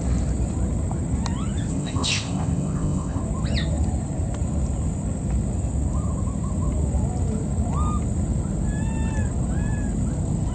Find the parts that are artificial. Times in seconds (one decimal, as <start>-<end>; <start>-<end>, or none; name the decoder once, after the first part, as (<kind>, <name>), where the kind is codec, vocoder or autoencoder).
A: 1.7-3.2 (codec, ZipCodec)